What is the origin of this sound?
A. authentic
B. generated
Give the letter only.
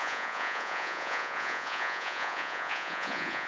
B